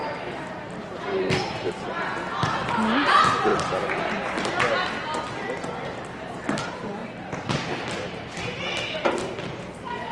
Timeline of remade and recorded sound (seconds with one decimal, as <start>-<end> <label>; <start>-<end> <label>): 0.0-1.9 remade; 1.9-7.0 recorded; 7.0-8.6 remade; 8.6-10.1 recorded

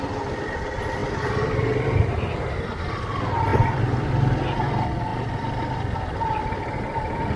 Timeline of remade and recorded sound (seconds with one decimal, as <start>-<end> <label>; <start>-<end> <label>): 0.0-1.0 recorded; 1.0-2.7 remade; 2.7-3.5 recorded; 3.5-4.1 remade; 4.1-7.4 recorded

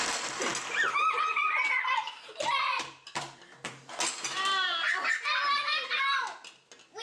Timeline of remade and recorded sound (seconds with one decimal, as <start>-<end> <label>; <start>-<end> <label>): 0.0-2.6 recorded; 2.6-3.7 remade; 3.7-7.0 recorded

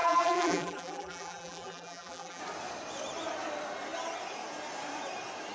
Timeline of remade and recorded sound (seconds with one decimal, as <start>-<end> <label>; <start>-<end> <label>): 0.0-2.4 remade; 2.4-5.5 recorded

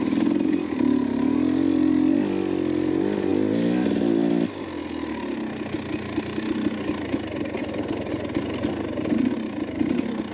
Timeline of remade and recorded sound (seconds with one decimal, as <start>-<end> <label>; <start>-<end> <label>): 0.0-10.3 recorded

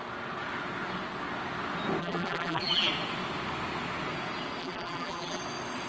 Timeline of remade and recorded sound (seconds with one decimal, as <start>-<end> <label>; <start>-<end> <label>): 0.0-2.0 recorded; 2.0-2.9 remade; 2.9-4.6 recorded; 4.6-5.4 remade; 5.4-5.9 recorded

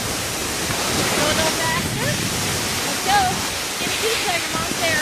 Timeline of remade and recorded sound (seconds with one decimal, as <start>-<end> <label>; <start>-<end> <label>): 0.0-5.0 recorded